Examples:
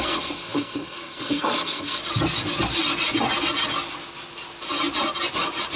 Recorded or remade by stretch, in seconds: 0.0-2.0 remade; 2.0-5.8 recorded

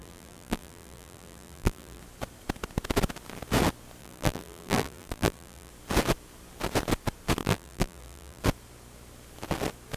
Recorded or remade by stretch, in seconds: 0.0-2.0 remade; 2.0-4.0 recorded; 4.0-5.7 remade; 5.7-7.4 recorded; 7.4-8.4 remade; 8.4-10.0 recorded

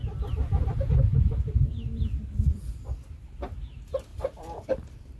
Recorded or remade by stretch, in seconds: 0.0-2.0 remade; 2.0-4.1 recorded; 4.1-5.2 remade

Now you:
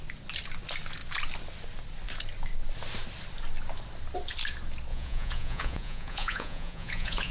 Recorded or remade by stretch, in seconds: 0.0-4.9 recorded; 4.9-7.3 remade